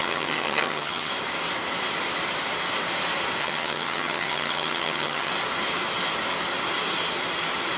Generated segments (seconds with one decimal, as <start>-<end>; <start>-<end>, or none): 0.0-1.1; 3.4-5.3